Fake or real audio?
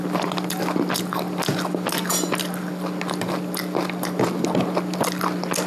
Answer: real